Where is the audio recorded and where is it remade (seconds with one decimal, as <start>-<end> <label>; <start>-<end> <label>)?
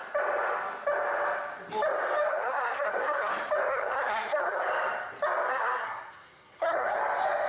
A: 0.0-2.3 recorded; 2.3-3.3 remade; 3.3-3.7 recorded; 3.7-4.6 remade; 4.6-5.5 recorded; 5.5-7.0 remade; 7.0-7.5 recorded